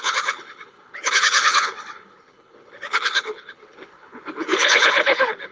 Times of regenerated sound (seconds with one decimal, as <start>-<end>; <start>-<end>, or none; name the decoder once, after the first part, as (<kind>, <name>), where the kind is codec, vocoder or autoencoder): 0.0-5.5 (codec, HILCodec)